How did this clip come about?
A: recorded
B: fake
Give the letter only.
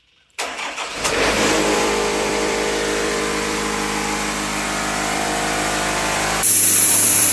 B